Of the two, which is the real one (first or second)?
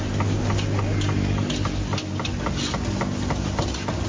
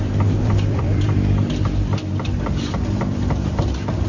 first